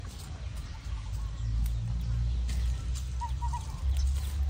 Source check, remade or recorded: recorded